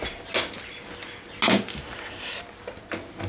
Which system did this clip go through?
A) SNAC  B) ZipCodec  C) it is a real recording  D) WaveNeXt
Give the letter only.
C